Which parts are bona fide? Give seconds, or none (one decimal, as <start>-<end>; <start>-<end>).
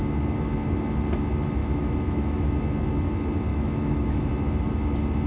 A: 0.0-1.6; 2.5-3.5; 4.3-5.3